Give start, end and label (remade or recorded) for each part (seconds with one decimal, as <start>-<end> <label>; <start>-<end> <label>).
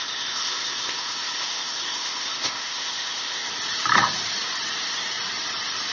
0.0-3.5 remade; 3.5-5.9 recorded